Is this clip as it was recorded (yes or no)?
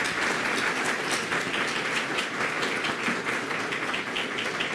yes